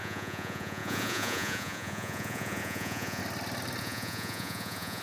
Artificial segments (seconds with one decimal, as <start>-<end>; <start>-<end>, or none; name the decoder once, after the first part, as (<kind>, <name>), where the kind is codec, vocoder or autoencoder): 0.0-3.2 (vocoder, Vocos); 3.8-5.0